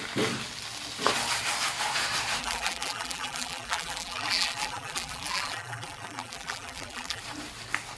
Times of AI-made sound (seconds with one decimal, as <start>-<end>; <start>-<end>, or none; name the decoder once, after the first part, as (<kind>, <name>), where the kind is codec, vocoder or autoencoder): 2.4-7.2 (vocoder, BigVGAN v2)